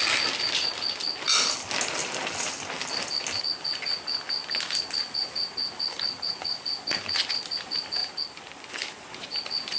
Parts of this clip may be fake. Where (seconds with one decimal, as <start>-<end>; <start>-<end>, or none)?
none